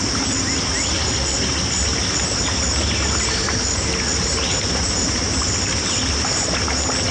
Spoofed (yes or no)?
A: no